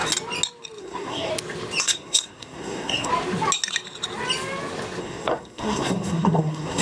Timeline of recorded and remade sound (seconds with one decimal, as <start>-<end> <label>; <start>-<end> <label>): 0.0-0.8 recorded; 0.8-1.3 remade; 1.3-1.8 recorded; 1.8-3.1 remade; 3.1-5.0 recorded; 5.0-6.8 remade